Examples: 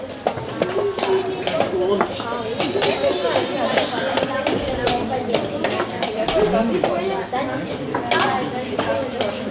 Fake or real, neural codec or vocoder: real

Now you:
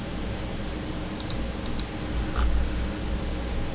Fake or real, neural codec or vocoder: real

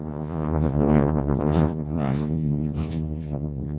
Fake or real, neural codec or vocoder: fake, vocoder, Vocos